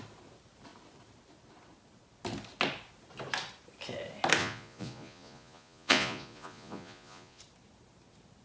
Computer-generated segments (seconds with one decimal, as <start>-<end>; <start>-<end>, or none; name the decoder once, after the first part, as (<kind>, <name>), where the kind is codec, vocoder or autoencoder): 4.4-7.4 (vocoder, Vocos)